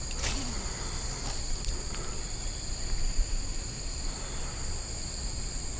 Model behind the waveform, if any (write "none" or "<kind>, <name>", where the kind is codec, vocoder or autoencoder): none